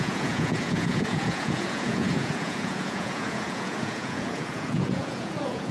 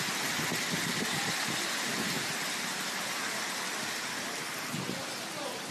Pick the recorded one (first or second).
second